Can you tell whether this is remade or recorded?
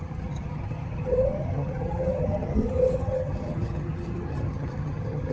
remade